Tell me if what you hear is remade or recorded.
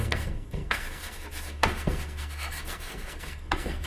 remade